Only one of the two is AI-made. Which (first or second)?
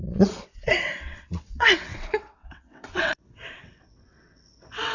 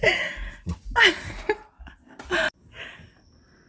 first